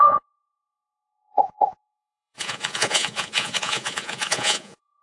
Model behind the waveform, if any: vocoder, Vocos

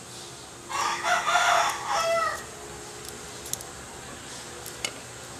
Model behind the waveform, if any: none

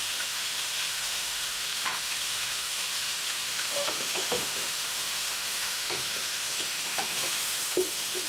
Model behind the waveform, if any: autoencoder, DAC-VAE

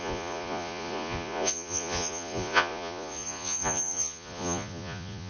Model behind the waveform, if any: vocoder, Vocos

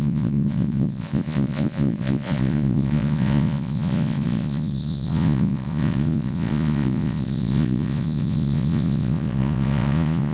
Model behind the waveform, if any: vocoder, Vocos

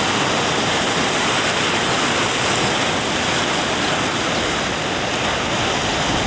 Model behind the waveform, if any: none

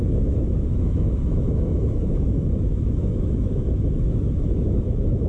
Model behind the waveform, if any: autoencoder, DAC-VAE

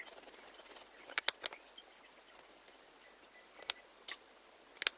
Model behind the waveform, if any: none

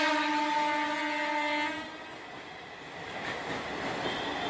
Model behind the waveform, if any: none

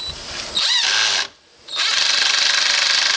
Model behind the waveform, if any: none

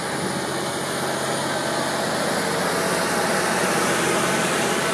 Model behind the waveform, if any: none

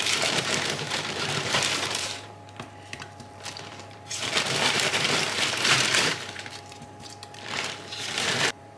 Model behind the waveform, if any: vocoder, BigVGAN v2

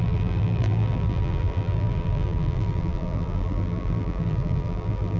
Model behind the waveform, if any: vocoder, BigVGAN v2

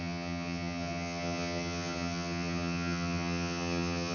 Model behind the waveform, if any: vocoder, HiFi-GAN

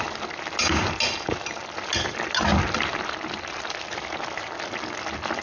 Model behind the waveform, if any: none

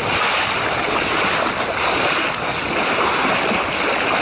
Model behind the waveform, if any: none